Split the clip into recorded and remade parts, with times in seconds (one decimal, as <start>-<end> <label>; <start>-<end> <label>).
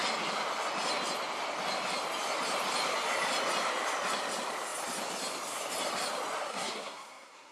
0.0-6.5 recorded; 6.5-7.5 remade